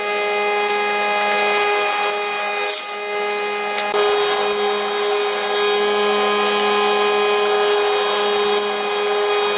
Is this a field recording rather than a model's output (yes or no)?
yes